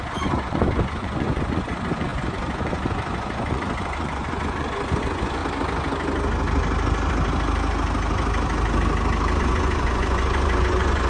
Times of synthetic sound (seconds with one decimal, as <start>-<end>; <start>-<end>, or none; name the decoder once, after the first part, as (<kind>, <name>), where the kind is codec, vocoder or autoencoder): 0.0-5.4 (vocoder, Vocos); 9.4-11.1